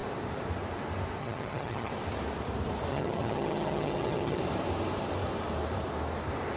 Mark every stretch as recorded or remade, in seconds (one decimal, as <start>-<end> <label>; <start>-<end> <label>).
0.0-1.2 recorded; 1.2-1.9 remade; 1.9-2.9 recorded; 2.9-4.4 remade; 4.4-6.6 recorded